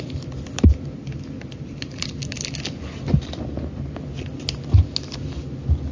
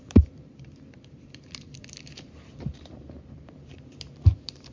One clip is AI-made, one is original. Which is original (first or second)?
first